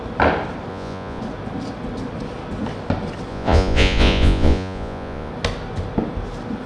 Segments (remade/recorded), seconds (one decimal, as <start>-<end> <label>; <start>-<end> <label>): 0.0-0.7 recorded; 0.7-1.2 remade; 1.2-3.3 recorded; 3.3-5.3 remade; 5.3-6.7 recorded